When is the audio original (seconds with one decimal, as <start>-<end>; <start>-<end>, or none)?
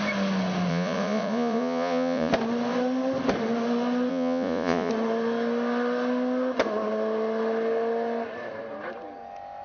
0.0-0.7; 2.3-4.1; 4.9-9.6